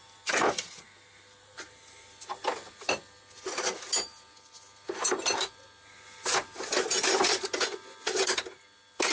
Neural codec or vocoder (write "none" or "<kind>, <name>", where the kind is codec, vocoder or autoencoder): none